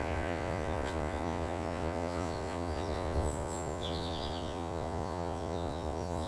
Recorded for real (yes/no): no